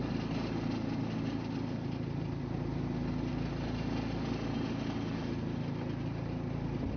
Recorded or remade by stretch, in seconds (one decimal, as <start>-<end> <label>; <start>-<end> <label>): 0.0-7.0 recorded